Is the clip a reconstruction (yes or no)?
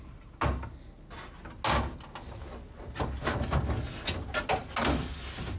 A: no